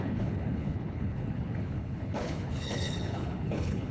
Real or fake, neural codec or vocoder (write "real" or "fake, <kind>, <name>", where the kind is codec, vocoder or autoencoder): fake, codec, HILCodec